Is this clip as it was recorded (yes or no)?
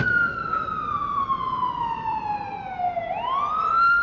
yes